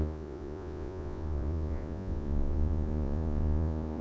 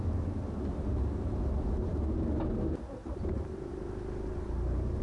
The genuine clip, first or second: second